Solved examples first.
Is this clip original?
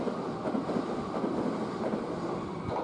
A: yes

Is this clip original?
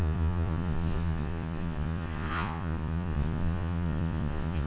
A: no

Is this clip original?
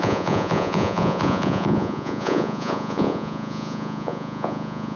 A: no